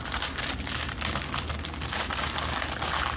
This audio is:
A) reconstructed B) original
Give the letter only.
B